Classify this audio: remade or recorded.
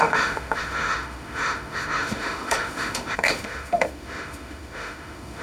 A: remade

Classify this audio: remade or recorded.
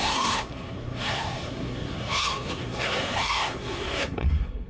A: remade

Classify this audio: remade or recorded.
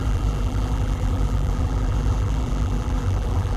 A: remade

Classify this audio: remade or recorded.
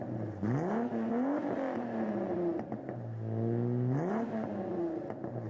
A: recorded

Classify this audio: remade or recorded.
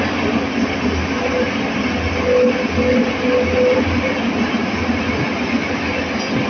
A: recorded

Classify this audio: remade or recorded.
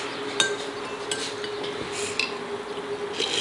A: recorded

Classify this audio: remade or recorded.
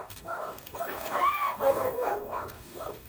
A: remade